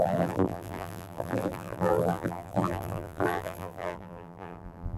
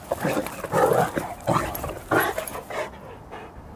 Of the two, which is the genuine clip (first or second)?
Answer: second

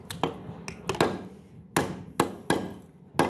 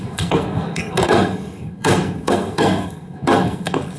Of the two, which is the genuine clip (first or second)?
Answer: first